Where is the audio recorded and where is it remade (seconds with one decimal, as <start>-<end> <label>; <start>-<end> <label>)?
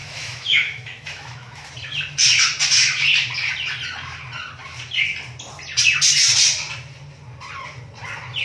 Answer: 0.0-1.7 remade; 1.7-8.4 recorded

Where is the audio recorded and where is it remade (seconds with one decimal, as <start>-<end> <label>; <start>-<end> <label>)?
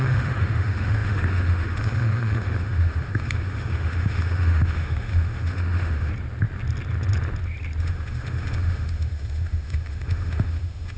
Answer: 0.0-6.1 remade; 6.1-7.8 recorded; 7.8-11.0 remade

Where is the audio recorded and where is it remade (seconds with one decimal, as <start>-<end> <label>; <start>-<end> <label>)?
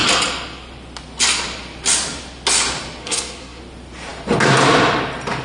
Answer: 0.0-3.0 recorded; 3.0-3.6 remade; 3.6-5.4 recorded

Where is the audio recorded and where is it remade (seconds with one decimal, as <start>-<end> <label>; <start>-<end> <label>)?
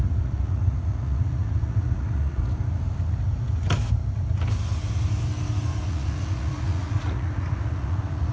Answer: 0.0-2.4 remade; 2.4-5.9 recorded; 5.9-8.3 remade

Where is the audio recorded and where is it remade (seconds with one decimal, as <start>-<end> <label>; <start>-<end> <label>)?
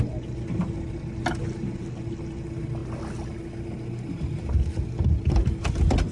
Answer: 0.0-6.1 recorded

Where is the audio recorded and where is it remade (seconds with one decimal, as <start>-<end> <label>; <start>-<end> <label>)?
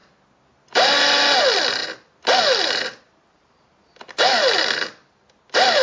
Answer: 0.0-5.8 recorded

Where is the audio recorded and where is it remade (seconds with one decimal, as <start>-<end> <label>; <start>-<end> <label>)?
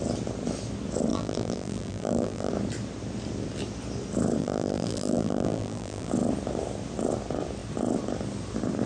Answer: 0.0-1.1 recorded; 1.1-2.5 remade; 2.5-4.4 recorded; 4.4-6.1 remade; 6.1-8.9 recorded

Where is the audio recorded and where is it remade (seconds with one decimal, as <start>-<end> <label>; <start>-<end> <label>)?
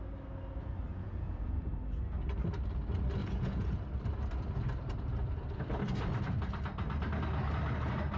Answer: 0.0-0.9 recorded; 0.9-1.7 remade; 1.7-3.2 recorded; 3.2-3.8 remade; 3.8-8.2 recorded